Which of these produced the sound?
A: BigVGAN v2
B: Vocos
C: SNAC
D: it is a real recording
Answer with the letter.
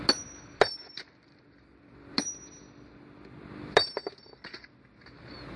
D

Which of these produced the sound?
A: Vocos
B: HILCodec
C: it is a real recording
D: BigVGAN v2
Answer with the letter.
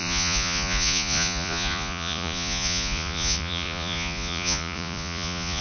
A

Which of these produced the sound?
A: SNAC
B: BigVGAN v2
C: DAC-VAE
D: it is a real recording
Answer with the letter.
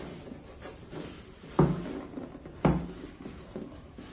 D